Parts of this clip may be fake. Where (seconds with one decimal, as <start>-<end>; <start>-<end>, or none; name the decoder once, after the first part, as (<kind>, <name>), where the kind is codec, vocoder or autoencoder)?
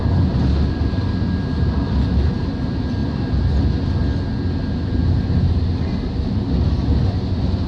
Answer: none